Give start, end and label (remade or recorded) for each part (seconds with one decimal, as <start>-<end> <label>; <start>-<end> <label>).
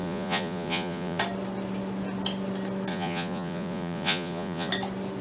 0.0-1.2 remade; 1.2-2.9 recorded; 2.9-4.7 remade; 4.7-5.2 recorded